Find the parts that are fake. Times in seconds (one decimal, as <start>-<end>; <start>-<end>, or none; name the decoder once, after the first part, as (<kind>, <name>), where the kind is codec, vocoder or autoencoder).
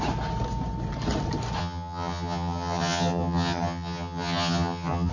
1.6-5.1 (vocoder, HiFi-GAN)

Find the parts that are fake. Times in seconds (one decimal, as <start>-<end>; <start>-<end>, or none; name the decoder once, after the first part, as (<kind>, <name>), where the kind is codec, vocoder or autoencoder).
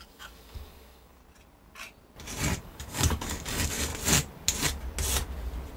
0.0-1.2 (codec, DAC); 2.6-3.9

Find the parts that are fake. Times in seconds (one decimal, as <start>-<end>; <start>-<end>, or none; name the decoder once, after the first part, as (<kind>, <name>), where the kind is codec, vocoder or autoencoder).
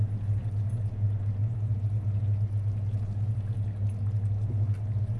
none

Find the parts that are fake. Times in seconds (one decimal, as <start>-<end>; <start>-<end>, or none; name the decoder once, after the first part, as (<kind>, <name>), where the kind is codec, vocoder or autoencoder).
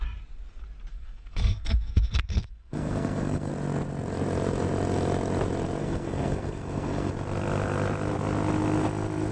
0.9-3.5 (codec, SNAC); 5.8-7.1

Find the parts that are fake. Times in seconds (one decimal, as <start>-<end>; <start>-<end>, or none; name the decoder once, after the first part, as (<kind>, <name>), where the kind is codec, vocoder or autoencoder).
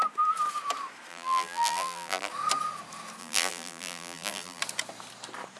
1.1-2.3 (vocoder, BigVGAN v2); 3.2-4.6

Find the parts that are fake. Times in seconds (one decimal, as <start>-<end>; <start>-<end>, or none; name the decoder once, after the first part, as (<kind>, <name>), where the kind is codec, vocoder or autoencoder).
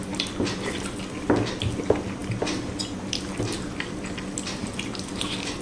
none